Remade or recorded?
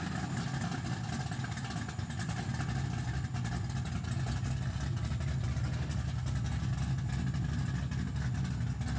recorded